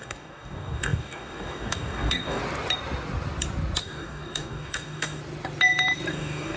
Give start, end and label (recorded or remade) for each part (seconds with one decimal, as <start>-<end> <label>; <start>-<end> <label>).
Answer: 0.0-2.4 remade; 2.4-3.8 recorded; 3.8-5.2 remade; 5.2-6.1 recorded; 6.1-6.6 remade